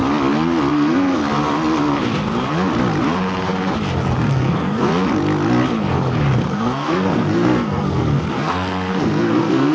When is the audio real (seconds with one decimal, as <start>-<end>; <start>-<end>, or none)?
0.0-0.7; 1.2-4.3; 4.9-6.5